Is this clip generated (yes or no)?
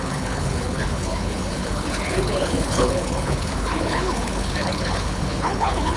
yes